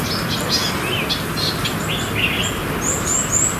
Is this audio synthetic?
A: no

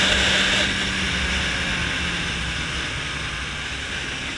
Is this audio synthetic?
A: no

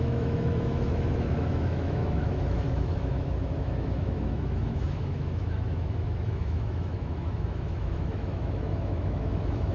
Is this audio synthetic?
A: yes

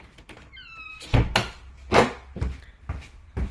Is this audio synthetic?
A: no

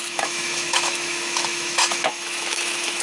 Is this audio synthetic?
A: yes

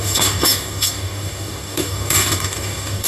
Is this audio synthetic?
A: yes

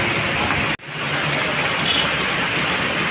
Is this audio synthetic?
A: no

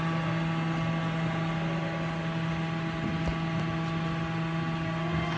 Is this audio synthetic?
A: no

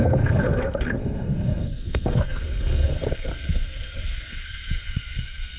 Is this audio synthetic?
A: yes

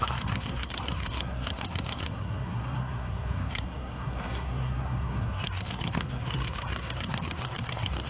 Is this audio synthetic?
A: yes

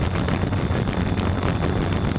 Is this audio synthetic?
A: no